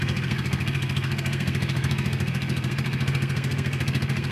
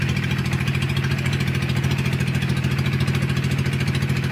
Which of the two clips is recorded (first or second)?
second